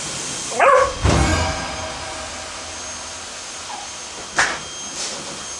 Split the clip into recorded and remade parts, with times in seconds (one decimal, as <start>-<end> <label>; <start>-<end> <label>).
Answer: 0.0-5.6 recorded